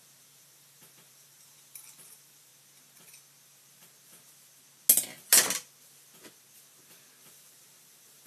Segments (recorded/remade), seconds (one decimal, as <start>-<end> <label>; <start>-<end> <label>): 0.0-2.5 remade; 2.5-7.3 recorded; 7.3-8.3 remade